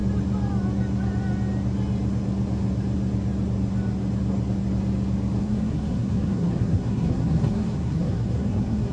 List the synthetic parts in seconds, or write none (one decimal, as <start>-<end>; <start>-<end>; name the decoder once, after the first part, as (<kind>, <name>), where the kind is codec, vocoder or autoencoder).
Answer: 5.4-8.9 (codec, SNAC)